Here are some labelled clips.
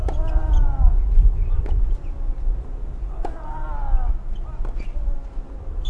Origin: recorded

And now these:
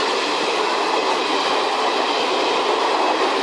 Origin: recorded